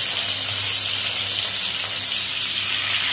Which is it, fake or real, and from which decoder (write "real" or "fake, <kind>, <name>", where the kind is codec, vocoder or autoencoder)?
real